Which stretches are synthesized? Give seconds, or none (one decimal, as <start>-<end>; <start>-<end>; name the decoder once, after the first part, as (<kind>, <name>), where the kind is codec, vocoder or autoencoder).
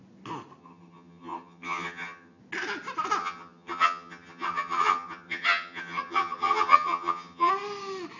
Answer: 0.6-2.4 (vocoder, HiFi-GAN); 3.2-7.5